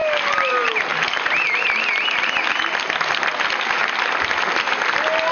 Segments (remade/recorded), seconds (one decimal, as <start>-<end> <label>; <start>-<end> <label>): 0.0-5.3 recorded